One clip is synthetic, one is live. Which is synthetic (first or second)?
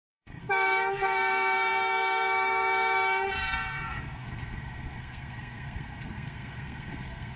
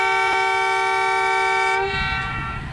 first